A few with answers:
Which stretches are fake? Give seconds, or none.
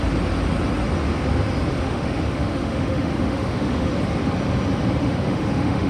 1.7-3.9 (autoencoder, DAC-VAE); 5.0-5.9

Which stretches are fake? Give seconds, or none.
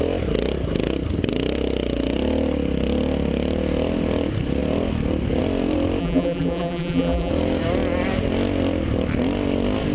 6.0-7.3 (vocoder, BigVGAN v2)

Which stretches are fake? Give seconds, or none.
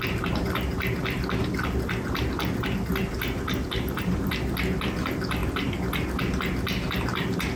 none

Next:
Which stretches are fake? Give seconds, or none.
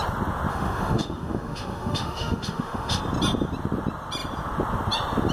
0.5-3.0 (autoencoder, DAC-VAE)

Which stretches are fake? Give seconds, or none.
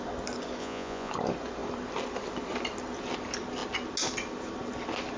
0.6-1.1 (vocoder, Vocos)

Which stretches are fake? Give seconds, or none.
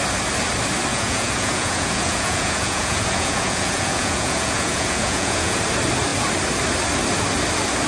0.9-5.6 (vocoder, Vocos)